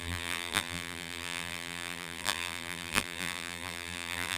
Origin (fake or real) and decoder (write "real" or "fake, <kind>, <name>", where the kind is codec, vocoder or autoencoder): fake, vocoder, BigVGAN v2